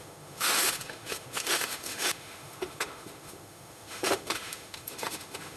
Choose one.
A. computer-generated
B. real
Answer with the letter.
A